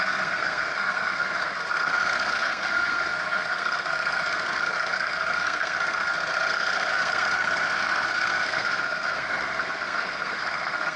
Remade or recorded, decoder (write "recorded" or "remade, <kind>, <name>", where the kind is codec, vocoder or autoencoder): remade, codec, SNAC